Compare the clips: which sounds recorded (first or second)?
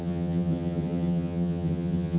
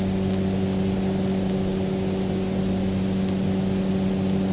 second